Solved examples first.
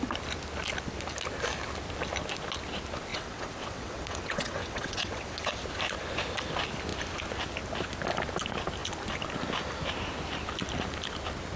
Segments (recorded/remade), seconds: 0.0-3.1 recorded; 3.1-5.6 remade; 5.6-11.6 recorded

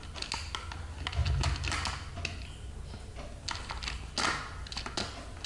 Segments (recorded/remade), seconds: 0.0-5.5 recorded

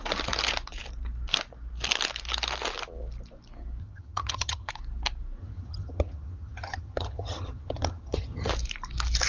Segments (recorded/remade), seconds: 0.0-3.8 recorded; 3.8-4.7 remade; 4.7-5.4 recorded; 5.4-8.5 remade; 8.5-9.3 recorded

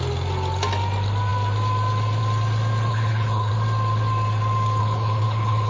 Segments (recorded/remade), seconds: 0.0-2.9 recorded; 2.9-3.5 remade; 3.5-4.8 recorded; 4.8-5.7 remade